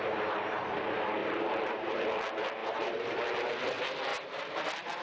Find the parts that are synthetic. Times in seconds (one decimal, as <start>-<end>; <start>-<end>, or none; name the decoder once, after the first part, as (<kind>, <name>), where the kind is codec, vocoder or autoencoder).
1.2-2.0 (vocoder, BigVGAN v2); 2.6-3.2; 4.1-4.6